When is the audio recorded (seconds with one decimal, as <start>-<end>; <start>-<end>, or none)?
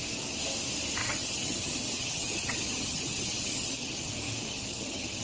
0.0-1.0; 4.1-4.5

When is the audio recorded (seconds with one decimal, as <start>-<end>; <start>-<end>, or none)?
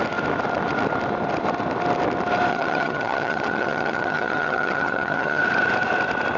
0.0-2.5; 5.4-6.4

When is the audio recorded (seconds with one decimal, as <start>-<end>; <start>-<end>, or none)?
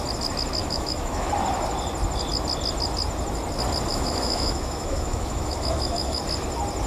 0.0-0.6; 1.3-3.9; 6.2-6.9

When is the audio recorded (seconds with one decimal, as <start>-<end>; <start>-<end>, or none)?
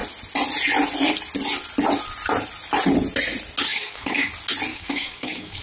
0.0-3.7; 4.3-4.7